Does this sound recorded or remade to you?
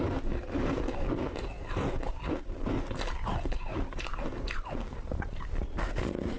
recorded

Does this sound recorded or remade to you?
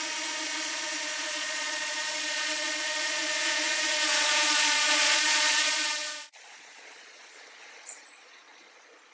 remade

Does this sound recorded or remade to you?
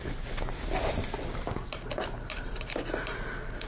recorded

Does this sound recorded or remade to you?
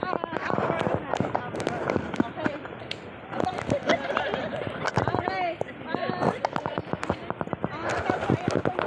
recorded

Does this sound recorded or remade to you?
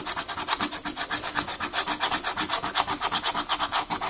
recorded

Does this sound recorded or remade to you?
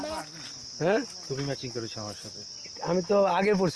recorded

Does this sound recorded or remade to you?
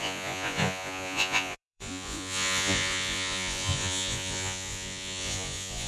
remade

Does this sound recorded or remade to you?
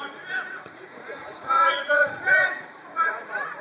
remade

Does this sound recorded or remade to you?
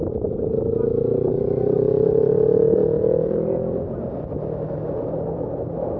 recorded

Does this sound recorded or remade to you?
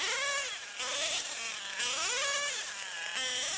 recorded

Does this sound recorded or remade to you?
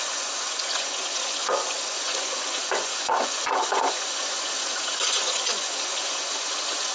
remade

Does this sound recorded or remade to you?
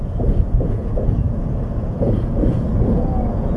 remade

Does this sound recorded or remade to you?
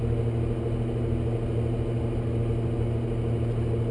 recorded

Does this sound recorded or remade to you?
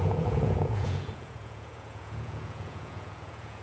remade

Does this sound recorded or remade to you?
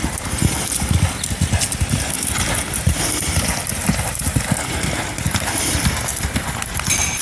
recorded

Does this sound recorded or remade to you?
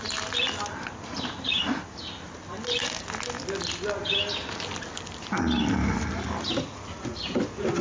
recorded